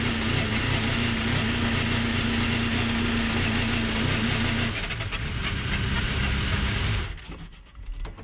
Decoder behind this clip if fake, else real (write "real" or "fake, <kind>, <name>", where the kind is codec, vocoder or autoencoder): real